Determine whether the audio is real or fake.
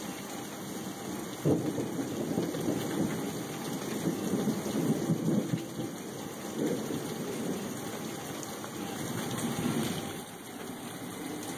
real